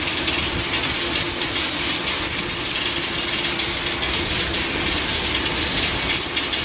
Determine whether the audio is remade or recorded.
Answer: recorded